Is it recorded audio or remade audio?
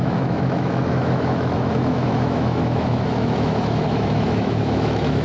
remade